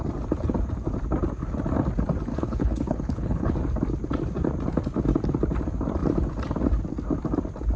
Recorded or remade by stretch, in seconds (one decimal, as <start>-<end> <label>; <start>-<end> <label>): 0.0-2.3 recorded; 2.3-3.5 remade; 3.5-7.8 recorded